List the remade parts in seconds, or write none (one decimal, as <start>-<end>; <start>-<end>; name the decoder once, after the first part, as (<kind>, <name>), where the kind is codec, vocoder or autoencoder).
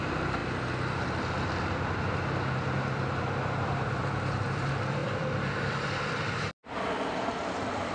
0.0-0.4 (vocoder, BigVGAN v2); 3.9-7.9